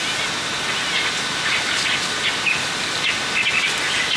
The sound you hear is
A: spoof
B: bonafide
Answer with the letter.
B